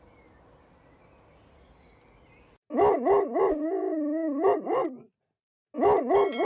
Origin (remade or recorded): recorded